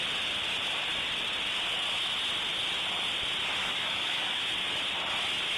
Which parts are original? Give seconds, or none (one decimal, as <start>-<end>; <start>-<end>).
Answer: 0.0-3.6; 4.4-5.6